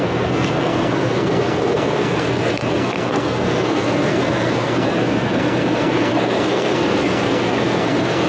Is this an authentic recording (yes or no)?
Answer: no